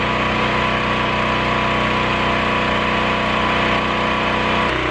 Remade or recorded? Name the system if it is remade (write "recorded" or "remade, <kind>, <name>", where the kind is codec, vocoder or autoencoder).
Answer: recorded